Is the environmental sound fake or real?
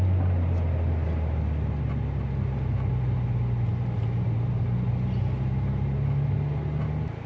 real